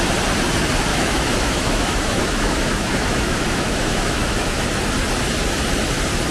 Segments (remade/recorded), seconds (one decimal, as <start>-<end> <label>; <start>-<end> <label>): 0.0-0.9 recorded; 0.9-4.7 remade; 4.7-6.3 recorded